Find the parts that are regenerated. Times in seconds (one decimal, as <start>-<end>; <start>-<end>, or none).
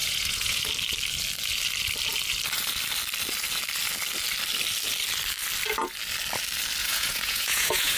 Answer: 0.0-0.6; 6.8-8.0